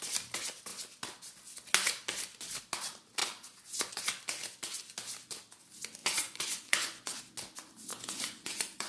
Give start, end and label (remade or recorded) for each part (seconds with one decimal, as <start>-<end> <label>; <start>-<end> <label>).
0.0-3.2 recorded; 3.2-4.0 remade; 4.0-6.0 recorded; 6.0-7.2 remade; 7.2-7.9 recorded; 7.9-8.9 remade